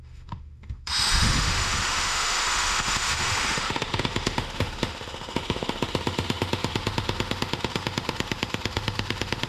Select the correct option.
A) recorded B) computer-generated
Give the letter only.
B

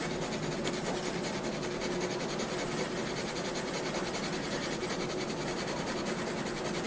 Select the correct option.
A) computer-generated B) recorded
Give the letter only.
B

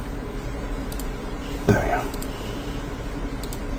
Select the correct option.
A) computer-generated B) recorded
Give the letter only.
A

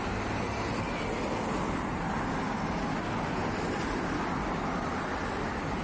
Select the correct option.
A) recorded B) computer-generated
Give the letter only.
A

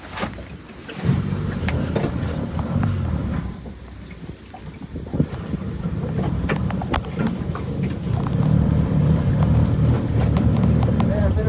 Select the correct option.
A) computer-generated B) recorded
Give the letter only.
B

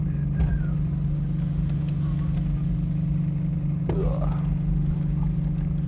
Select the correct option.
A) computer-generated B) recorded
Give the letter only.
B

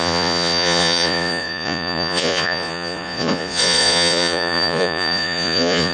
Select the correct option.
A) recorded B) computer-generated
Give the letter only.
B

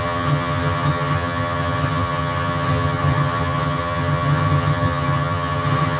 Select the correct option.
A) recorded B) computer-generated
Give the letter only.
B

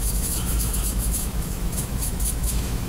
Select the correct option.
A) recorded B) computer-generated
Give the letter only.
B